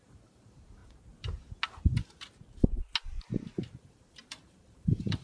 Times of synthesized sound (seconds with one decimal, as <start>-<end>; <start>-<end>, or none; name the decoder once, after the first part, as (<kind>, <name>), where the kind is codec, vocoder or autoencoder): 0.0-0.8 (vocoder, BigVGAN v2); 3.8-5.2